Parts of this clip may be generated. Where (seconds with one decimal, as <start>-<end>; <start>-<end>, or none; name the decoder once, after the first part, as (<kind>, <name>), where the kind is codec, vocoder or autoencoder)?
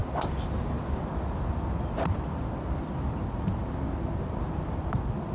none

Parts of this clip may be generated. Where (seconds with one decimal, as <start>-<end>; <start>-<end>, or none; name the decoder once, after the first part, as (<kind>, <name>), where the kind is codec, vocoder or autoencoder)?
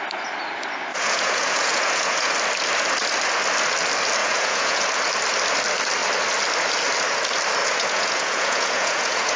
0.9-2.3 (vocoder, Vocos); 4.2-4.8; 7.6-9.4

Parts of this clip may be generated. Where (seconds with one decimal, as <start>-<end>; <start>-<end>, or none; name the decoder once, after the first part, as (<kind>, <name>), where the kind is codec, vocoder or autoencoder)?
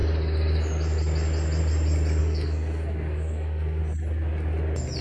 2.2-3.8 (codec, SNAC)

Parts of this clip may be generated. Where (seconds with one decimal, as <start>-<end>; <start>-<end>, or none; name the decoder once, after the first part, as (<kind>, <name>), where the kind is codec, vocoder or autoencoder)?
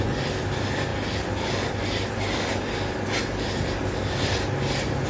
none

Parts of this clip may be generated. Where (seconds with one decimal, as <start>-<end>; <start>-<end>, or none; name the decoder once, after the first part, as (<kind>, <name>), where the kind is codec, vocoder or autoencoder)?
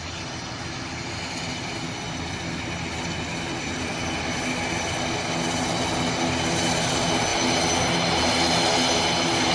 none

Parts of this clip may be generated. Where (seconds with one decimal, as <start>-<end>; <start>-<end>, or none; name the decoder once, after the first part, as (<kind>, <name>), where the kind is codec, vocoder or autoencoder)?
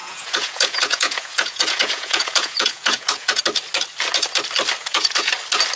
0.0-3.4 (vocoder, Vocos); 4.8-5.3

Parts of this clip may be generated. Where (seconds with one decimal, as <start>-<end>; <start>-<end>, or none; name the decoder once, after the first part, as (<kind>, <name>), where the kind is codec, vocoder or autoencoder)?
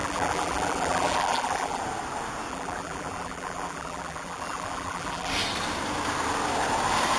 0.0-1.8 (vocoder, BigVGAN v2); 2.5-5.3